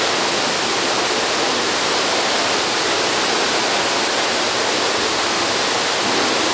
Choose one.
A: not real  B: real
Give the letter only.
B